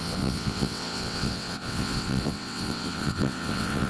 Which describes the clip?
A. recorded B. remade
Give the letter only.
B